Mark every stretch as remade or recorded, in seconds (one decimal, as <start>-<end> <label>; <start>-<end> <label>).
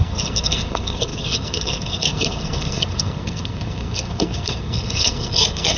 0.0-5.8 remade